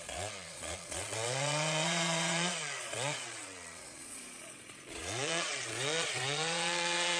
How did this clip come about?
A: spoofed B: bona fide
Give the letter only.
A